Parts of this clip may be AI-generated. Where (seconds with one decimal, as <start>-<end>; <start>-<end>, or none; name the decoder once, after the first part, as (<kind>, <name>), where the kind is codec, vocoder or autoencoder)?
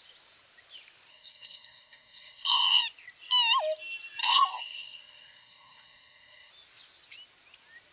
1.1-2.8 (codec, SNAC); 4.2-6.5